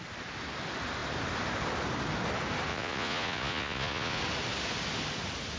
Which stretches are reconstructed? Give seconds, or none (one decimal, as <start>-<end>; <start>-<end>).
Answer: 2.7-4.2